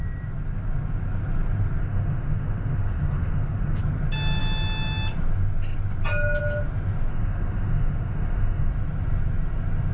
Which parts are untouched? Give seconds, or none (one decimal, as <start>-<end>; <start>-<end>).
0.0-1.8; 3.8-7.1; 8.7-9.9